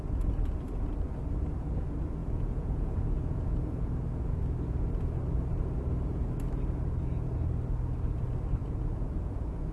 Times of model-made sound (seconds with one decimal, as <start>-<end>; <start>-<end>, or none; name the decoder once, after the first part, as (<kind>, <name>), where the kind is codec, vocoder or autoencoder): 2.2-3.9 (vocoder, Vocos); 8.6-9.7